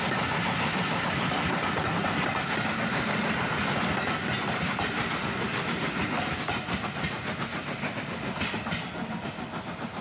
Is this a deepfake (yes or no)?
no